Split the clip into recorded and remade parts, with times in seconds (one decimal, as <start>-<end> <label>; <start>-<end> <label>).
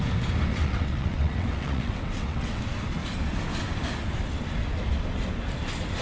0.0-0.5 recorded; 0.5-2.6 remade; 2.6-6.0 recorded